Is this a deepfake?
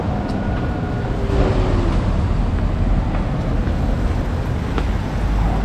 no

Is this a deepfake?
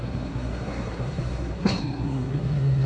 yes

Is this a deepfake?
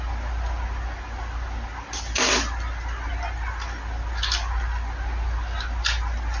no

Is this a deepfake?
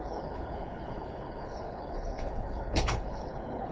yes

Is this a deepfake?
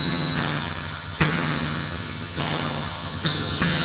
yes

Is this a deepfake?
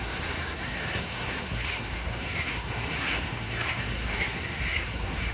yes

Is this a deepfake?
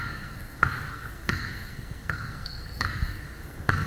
yes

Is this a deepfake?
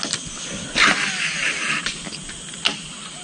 no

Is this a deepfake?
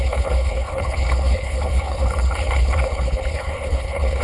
yes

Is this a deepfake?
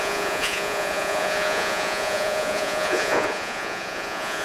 yes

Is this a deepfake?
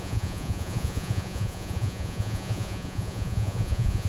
yes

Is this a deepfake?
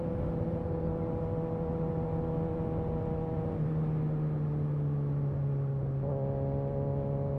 no